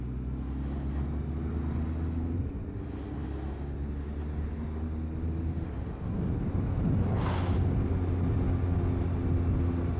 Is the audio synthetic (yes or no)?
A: no